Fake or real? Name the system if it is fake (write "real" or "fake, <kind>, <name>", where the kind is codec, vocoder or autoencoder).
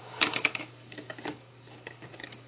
fake, codec, DAC